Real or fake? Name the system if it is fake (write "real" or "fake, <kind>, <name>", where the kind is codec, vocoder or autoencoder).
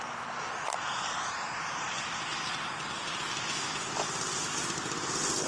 real